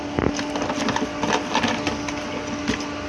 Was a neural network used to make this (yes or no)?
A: no